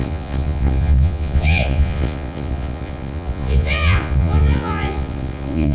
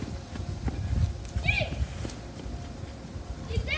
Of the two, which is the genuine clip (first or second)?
second